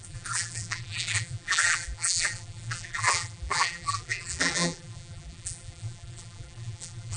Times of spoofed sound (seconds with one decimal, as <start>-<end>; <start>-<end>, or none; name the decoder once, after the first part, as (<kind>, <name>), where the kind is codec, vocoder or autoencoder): 0.0-7.2 (vocoder, BigVGAN v2)